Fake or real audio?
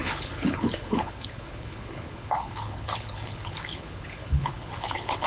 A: fake